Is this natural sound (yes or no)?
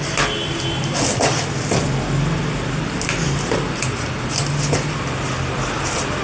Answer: yes